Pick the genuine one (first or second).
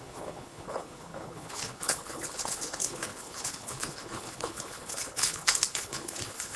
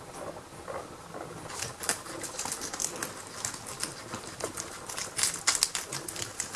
second